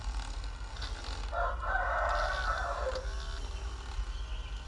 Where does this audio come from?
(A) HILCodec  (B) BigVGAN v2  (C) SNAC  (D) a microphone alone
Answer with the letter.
D